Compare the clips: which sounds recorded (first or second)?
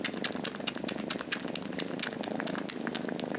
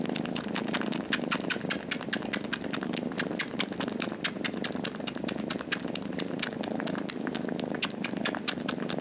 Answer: first